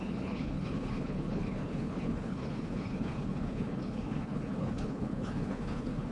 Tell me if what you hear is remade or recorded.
remade